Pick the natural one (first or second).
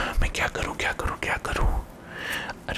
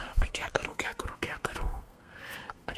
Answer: first